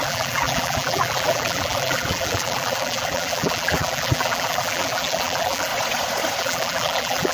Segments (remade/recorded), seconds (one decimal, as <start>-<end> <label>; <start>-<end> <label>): 0.0-5.7 remade; 5.7-6.4 recorded; 6.4-7.3 remade